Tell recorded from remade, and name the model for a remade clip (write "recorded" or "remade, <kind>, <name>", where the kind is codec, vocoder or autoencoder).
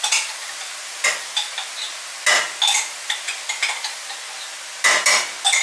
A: recorded